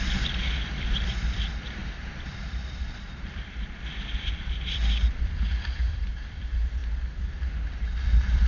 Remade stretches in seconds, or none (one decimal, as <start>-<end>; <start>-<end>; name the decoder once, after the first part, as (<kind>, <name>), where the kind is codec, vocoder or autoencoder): 0.0-6.8 (vocoder, BigVGAN v2); 7.8-8.5